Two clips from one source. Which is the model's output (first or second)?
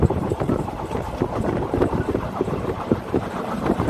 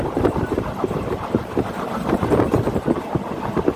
first